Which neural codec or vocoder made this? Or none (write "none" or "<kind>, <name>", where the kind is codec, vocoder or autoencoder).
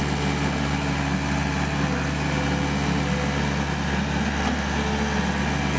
none